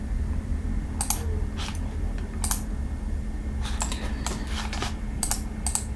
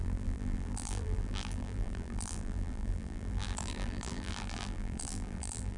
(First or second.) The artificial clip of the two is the second